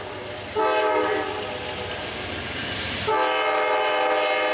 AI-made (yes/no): no